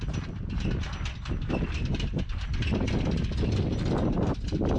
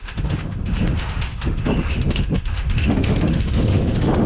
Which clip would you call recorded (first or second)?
first